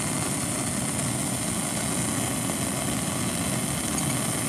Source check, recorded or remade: recorded